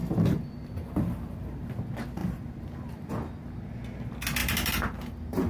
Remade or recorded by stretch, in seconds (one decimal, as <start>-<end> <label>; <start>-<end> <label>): 0.0-1.7 remade; 1.7-2.2 recorded; 2.2-3.1 remade; 3.1-4.4 recorded; 4.4-5.5 remade